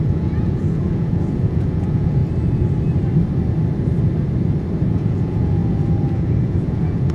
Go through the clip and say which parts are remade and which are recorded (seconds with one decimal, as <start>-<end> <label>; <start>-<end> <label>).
0.0-2.2 remade; 2.2-4.9 recorded; 4.9-7.1 remade